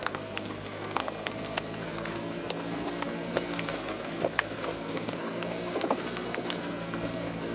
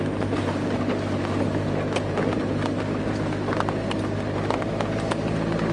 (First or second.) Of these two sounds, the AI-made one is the first